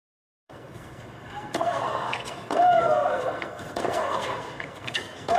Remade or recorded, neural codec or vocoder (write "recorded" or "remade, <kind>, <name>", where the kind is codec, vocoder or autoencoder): remade, codec, SNAC